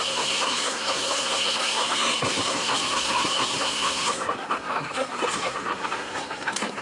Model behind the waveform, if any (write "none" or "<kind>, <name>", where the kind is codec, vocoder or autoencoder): codec, SNAC